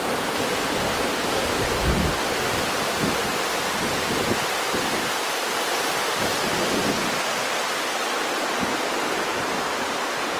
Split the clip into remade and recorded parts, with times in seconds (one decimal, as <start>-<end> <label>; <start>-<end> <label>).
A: 0.0-3.2 recorded; 3.2-8.3 remade; 8.3-10.4 recorded